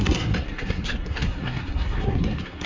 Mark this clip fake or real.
fake